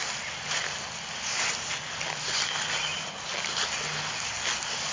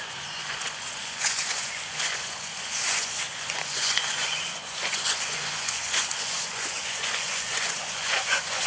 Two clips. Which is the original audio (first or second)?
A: first